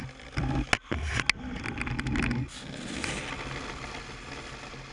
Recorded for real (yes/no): yes